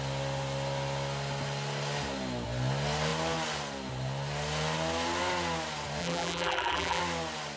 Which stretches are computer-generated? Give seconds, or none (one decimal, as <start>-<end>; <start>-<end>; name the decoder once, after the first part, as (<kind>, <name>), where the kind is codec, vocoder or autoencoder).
6.0-7.0 (vocoder, BigVGAN v2)